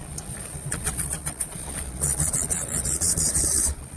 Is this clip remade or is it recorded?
remade